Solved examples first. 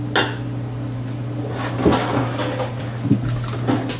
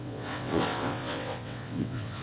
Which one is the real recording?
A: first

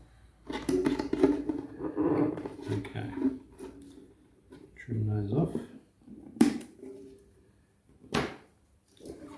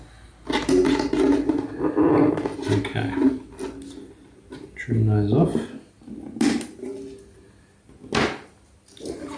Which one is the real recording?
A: second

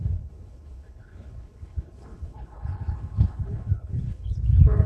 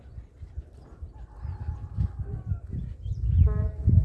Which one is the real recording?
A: second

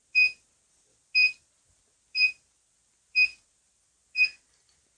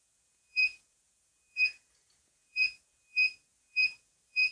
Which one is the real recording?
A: first